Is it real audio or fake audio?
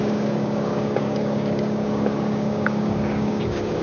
fake